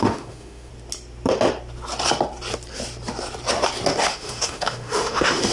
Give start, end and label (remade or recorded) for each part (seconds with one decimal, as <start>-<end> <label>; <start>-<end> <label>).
0.0-0.7 remade; 0.7-4.0 recorded; 4.0-5.5 remade